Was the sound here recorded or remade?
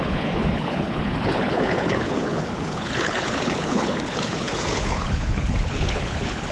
remade